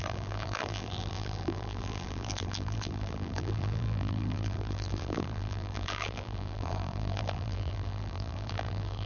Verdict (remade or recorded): remade